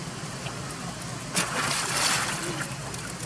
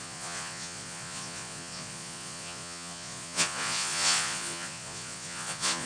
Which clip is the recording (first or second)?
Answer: first